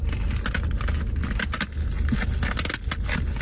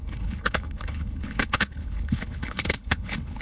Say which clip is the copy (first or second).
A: second